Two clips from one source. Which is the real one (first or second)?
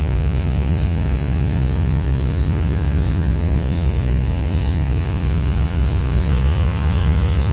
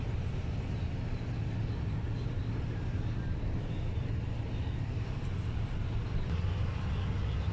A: second